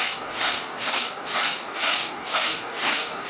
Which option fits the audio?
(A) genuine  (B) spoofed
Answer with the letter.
B